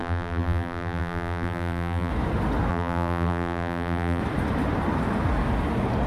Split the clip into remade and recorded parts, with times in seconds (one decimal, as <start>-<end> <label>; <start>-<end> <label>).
0.0-2.1 remade; 2.1-2.7 recorded; 2.7-4.2 remade; 4.2-6.1 recorded